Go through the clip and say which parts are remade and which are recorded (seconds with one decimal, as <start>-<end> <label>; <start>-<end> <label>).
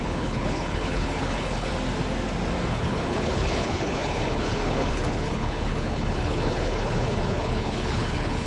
0.0-1.7 remade; 1.7-2.7 recorded; 2.7-8.5 remade